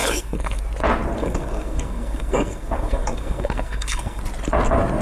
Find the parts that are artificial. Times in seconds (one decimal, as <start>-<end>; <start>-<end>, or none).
0.0-0.6; 1.2-4.2